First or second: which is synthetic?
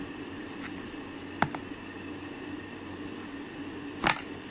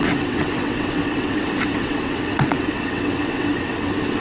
second